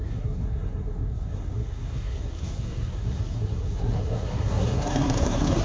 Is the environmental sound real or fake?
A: fake